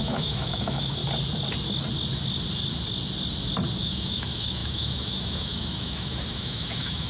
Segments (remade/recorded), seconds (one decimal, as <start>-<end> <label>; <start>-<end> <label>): 0.0-1.0 remade; 1.0-3.8 recorded; 3.8-7.1 remade